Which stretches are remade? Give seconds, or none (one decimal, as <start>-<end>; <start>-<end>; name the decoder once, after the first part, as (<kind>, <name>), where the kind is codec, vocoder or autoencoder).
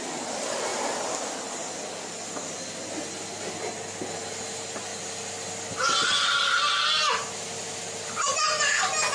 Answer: none